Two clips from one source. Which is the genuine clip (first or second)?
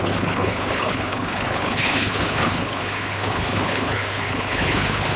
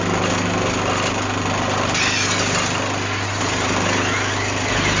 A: second